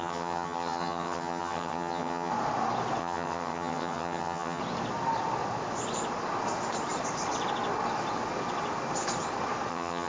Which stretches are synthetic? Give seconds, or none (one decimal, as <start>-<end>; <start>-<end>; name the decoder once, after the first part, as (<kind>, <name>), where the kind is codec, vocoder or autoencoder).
0.0-2.3 (vocoder, HiFi-GAN); 3.0-4.6; 9.7-10.1